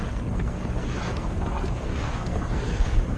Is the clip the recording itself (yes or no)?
no